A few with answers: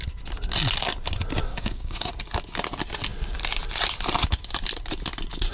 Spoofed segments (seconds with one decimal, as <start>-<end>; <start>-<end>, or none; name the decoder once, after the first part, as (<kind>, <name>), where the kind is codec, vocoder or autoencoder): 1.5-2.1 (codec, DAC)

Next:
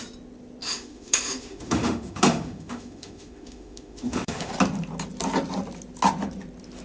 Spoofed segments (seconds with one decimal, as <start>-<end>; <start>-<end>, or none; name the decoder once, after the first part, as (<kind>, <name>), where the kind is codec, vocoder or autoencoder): 0.6-4.5 (autoencoder, DAC-VAE)

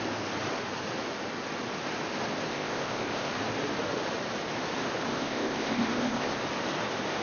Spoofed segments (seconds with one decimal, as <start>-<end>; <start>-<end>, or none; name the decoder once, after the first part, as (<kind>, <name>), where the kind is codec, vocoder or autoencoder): 2.5-3.3 (codec, ZipCodec); 5.1-6.4